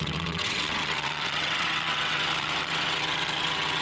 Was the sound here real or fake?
fake